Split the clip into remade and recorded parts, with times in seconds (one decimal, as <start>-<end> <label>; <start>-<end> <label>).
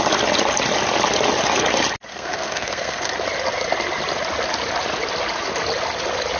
0.0-2.1 recorded; 2.1-3.1 remade; 3.1-6.4 recorded